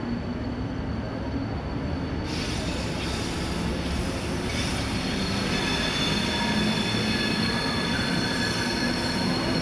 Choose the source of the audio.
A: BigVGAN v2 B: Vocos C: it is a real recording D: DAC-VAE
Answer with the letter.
C